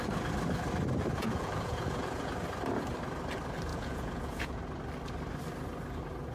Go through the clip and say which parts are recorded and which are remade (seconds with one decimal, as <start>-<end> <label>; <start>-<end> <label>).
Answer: 0.0-1.2 recorded; 1.2-2.3 remade; 2.3-3.7 recorded; 3.7-4.6 remade; 4.6-6.3 recorded